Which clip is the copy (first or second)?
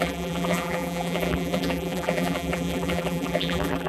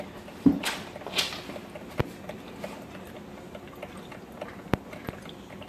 first